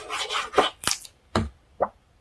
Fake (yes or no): no